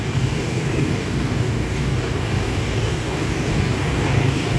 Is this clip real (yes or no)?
no